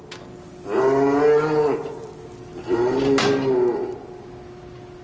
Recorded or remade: recorded